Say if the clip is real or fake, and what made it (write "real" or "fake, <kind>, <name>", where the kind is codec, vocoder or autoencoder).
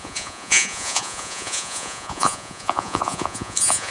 fake, vocoder, Vocos